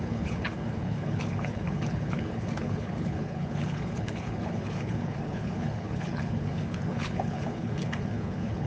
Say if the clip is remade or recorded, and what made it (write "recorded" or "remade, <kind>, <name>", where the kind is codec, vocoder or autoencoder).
remade, codec, HILCodec